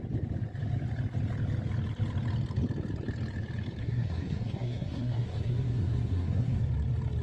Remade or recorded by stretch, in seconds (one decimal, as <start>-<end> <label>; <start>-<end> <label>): 0.0-3.8 recorded; 3.8-6.6 remade; 6.6-7.2 recorded